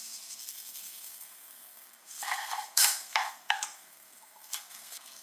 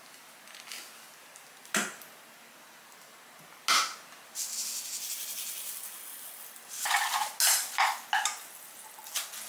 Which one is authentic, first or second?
second